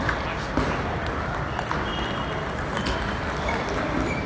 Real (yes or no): yes